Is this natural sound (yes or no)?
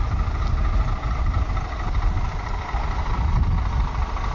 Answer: yes